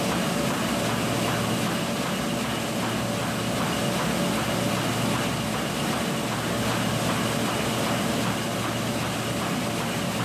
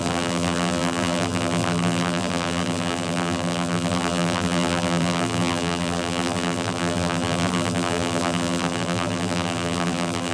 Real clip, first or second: first